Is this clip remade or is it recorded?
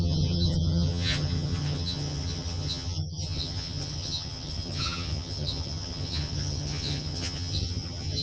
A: remade